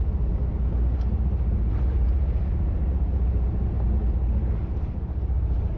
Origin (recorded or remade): remade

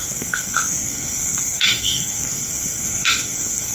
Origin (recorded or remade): remade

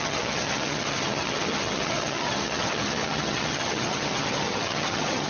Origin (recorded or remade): remade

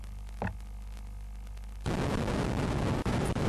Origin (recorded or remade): recorded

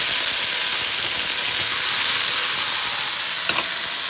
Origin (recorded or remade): recorded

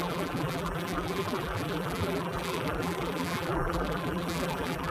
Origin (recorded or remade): remade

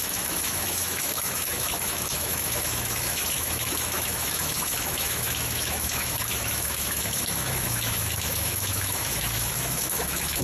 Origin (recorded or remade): remade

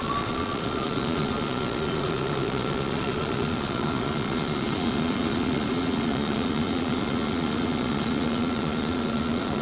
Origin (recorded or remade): remade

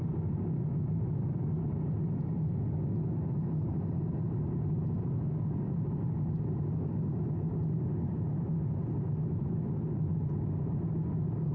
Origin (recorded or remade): recorded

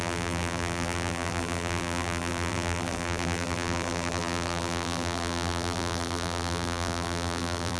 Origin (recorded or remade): remade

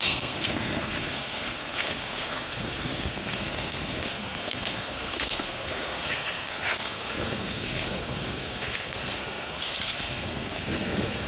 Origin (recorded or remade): remade